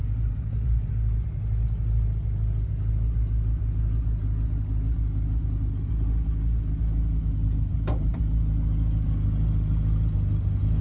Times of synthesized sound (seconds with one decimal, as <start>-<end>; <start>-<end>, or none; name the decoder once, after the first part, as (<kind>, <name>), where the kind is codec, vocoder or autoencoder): 0.0-0.9 (vocoder, BigVGAN v2); 7.4-8.2